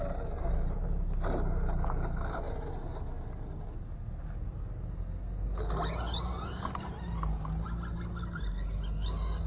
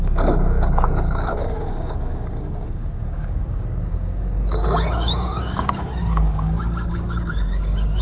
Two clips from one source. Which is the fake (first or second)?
second